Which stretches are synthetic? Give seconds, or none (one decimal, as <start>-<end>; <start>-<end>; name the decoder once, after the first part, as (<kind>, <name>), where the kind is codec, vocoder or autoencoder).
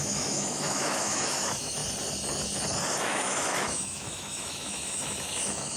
0.0-1.8 (autoencoder, DAC-VAE); 3.0-5.8